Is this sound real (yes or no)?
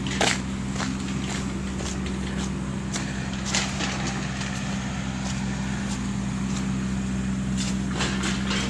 yes